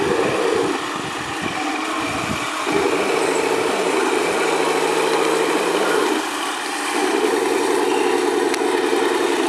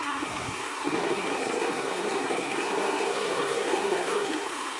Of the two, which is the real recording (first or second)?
first